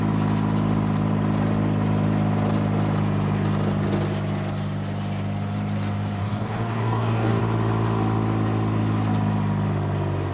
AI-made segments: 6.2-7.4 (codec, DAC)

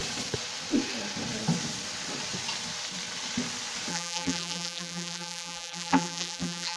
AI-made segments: 3.9-6.8 (vocoder, BigVGAN v2)